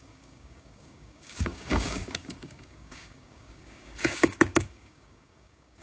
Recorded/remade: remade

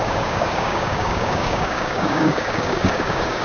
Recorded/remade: remade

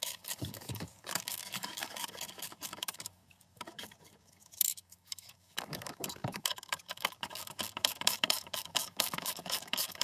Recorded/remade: remade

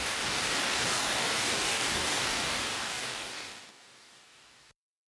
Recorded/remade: remade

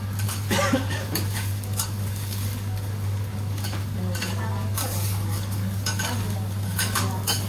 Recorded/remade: remade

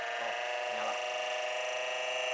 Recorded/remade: recorded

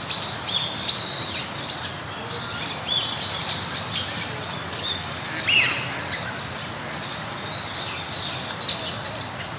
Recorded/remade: recorded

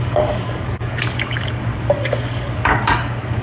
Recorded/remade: remade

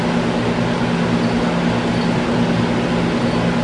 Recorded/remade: recorded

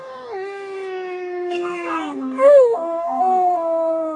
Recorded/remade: remade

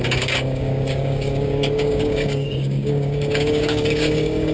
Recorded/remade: remade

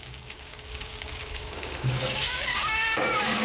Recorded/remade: remade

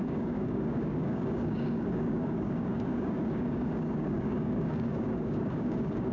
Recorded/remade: remade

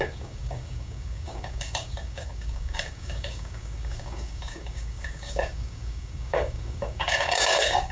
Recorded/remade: remade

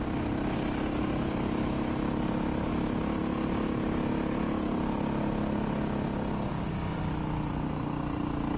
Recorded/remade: recorded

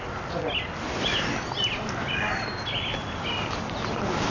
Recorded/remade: recorded